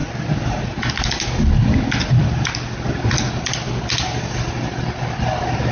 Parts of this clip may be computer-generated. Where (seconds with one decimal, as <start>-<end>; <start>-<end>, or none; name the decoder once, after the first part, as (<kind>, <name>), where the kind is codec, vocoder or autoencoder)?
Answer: none